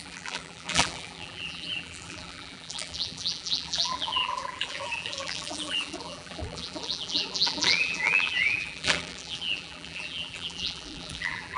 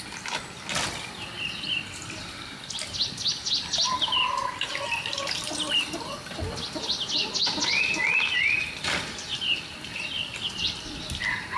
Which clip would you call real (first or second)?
second